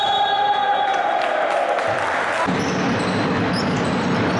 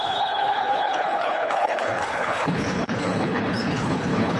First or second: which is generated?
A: second